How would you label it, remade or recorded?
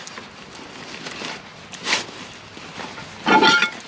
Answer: recorded